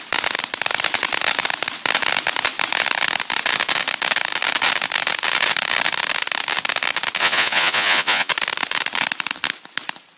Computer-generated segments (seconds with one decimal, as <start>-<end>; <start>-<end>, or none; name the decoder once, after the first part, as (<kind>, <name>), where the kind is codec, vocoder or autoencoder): 7.2-8.3 (vocoder, Vocos)